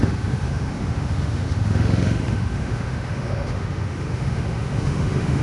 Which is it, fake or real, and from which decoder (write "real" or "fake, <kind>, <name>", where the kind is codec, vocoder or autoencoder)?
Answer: fake, autoencoder, DAC-VAE